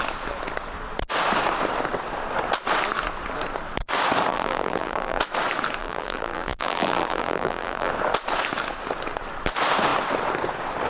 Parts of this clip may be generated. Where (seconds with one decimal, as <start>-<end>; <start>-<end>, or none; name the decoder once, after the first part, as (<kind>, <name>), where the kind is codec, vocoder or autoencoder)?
4.3-5.2 (vocoder, BigVGAN v2); 5.8-7.9